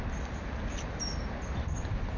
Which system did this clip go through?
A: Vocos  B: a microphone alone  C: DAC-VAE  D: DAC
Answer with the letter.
B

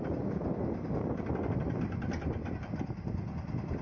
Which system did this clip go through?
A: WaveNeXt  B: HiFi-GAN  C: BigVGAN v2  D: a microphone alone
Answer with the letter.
D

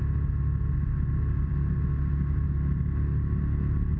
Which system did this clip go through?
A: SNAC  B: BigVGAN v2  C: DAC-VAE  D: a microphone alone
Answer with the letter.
D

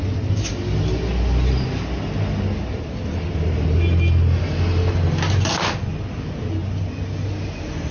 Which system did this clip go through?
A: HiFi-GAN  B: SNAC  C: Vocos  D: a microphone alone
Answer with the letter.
D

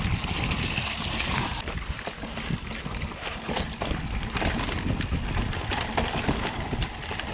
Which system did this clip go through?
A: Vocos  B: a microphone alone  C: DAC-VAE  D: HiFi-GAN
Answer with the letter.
B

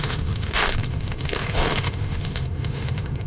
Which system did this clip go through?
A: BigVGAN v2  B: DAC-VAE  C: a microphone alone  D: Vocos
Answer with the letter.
B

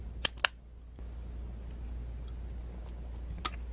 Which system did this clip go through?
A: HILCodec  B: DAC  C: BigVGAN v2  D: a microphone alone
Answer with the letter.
D